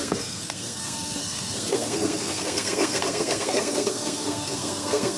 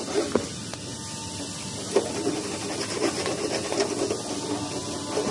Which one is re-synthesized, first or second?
first